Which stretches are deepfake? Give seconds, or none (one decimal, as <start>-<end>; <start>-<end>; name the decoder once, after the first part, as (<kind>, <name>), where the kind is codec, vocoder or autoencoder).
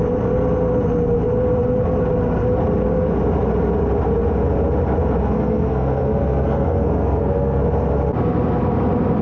5.2-7.6 (codec, SNAC)